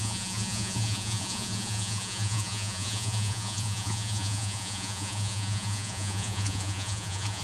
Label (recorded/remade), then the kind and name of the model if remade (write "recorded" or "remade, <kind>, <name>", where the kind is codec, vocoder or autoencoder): remade, vocoder, Vocos